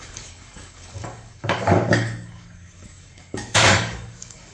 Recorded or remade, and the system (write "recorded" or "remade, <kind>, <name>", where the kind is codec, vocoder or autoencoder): remade, codec, DAC